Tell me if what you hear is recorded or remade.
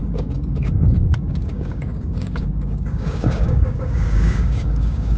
remade